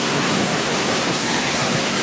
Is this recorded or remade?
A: remade